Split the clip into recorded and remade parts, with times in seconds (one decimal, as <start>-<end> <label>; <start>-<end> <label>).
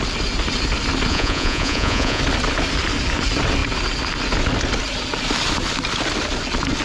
0.0-1.1 recorded; 1.1-2.2 remade; 2.2-6.8 recorded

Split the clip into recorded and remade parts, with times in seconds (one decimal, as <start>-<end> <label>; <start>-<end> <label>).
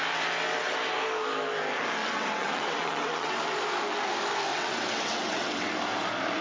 0.0-2.0 recorded; 2.0-3.3 remade; 3.3-4.5 recorded; 4.5-5.7 remade; 5.7-6.4 recorded